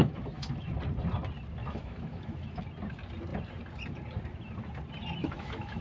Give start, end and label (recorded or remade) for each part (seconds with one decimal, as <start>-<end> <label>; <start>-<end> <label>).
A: 0.0-0.7 remade; 0.7-1.6 recorded; 1.6-2.6 remade; 2.6-5.2 recorded; 5.2-5.8 remade